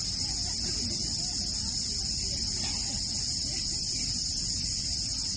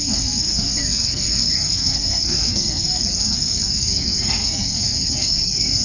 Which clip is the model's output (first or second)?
second